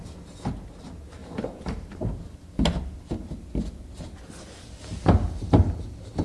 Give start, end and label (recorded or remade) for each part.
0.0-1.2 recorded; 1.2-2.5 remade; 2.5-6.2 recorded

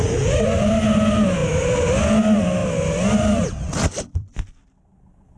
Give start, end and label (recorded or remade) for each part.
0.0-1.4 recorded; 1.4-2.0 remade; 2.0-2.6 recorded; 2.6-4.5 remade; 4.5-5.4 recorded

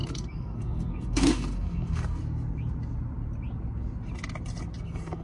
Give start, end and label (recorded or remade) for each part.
0.0-2.2 remade; 2.2-4.8 recorded; 4.8-5.2 remade

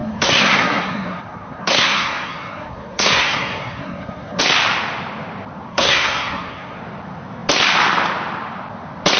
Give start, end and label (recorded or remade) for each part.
0.0-4.4 remade; 4.4-5.7 recorded; 5.7-6.8 remade; 6.8-9.2 recorded

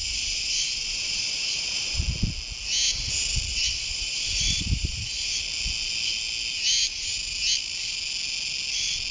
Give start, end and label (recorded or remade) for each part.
0.0-2.0 remade; 2.0-3.5 recorded; 3.5-5.0 remade; 5.0-9.1 recorded

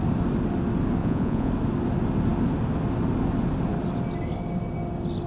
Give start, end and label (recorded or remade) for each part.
0.0-1.0 recorded; 1.0-1.5 remade; 1.5-5.3 recorded

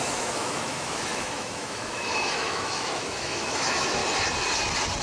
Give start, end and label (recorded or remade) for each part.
0.0-4.0 remade; 4.0-5.0 recorded

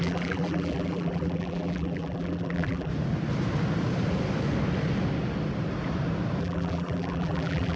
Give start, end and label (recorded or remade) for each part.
0.0-2.9 remade; 2.9-6.4 recorded; 6.4-7.8 remade